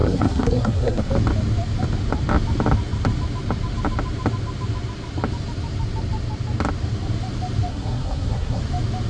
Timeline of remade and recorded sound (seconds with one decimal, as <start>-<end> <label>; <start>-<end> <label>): 0.0-1.1 remade; 1.1-7.7 recorded; 7.7-8.6 remade; 8.6-9.1 recorded